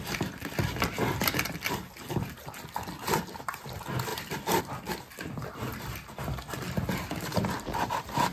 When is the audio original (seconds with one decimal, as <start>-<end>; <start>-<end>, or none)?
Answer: 0.0-8.3